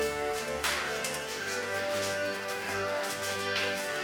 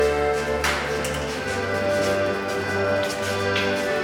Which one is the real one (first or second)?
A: second